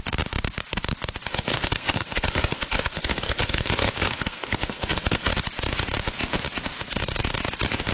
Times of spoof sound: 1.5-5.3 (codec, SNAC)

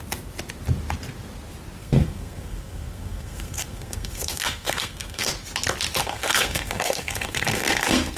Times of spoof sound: 1.8-5.3 (codec, SNAC); 6.0-8.2

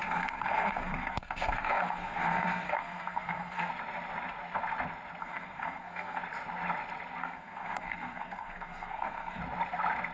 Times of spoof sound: 0.0-3.7 (codec, SNAC); 5.2-6.2; 7.2-9.4

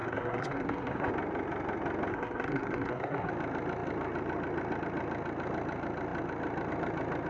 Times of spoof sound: 0.0-1.1 (codec, SNAC); 2.1-3.3

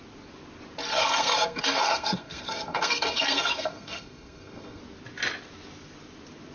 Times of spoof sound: 0.9-4.8 (codec, SNAC)

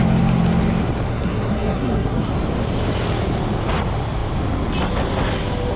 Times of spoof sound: 1.1-2.3 (codec, SNAC)

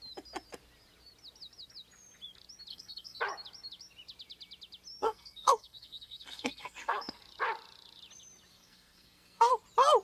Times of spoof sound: 2.7-3.2 (codec, SNAC); 5.0-7.2; 8.5-9.5

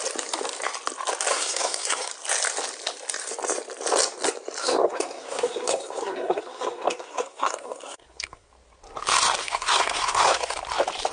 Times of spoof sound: 1.3-2.1 (codec, SNAC); 4.6-8.5; 9.4-10.6